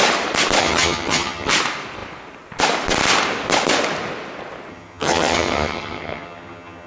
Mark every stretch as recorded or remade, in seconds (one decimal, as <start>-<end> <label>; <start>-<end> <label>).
0.0-0.6 recorded; 0.6-1.5 remade; 1.5-4.7 recorded; 4.7-6.9 remade